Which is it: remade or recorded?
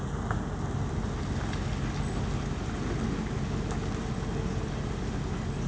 recorded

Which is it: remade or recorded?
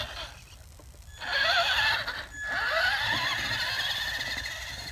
recorded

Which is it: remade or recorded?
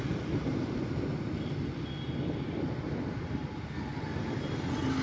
recorded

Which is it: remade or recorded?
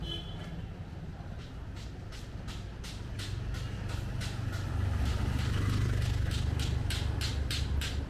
recorded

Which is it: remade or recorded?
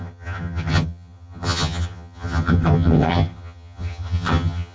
remade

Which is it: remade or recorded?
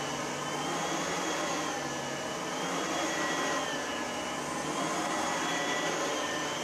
recorded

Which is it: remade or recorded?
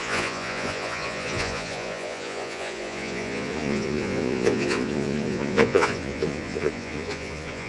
remade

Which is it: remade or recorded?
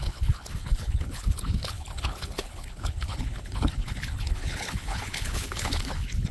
remade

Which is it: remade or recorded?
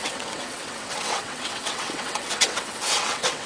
remade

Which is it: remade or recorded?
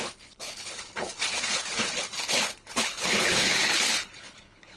remade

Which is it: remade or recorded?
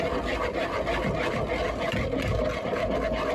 recorded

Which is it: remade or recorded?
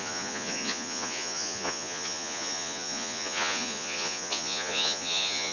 remade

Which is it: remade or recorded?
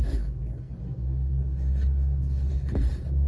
remade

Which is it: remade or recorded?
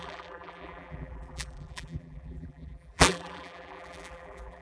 remade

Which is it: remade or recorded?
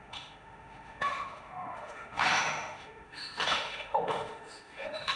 remade